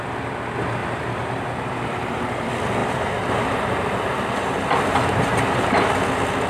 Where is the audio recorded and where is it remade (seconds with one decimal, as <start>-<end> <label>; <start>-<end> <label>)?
0.0-0.8 recorded; 0.8-2.4 remade; 2.4-2.8 recorded; 2.8-5.9 remade; 5.9-6.5 recorded